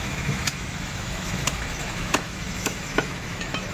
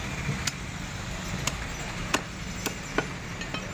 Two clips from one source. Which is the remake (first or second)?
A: first